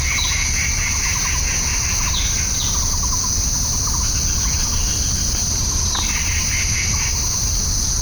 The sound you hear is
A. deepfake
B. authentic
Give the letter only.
B